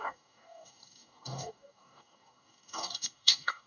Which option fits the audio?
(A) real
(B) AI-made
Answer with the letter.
B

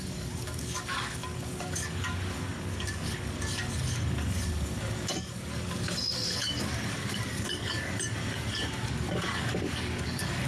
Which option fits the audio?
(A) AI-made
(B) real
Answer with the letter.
A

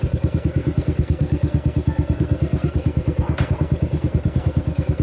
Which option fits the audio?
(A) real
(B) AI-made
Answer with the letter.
B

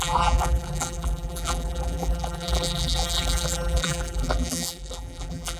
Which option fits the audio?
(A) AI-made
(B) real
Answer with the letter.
A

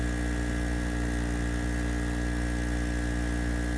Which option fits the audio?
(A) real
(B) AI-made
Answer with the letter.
A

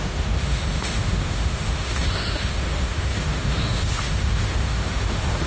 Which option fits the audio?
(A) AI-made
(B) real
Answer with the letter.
A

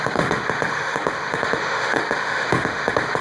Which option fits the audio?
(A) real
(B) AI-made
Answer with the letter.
B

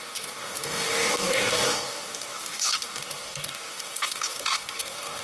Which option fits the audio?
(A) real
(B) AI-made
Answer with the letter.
B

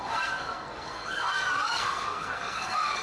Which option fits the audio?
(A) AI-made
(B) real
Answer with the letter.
A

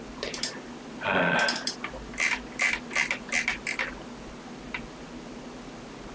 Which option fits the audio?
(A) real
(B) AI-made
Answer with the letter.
A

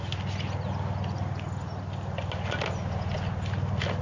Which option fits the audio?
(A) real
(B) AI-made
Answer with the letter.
A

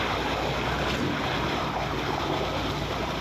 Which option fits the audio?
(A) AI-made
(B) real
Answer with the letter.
B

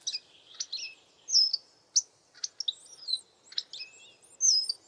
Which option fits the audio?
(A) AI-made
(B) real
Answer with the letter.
B